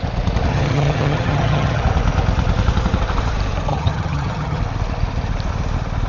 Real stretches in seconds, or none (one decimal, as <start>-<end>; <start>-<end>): 0.0-0.5; 1.8-3.7; 4.6-6.1